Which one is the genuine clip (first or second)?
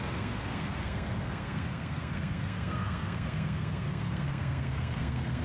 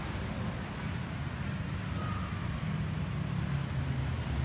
second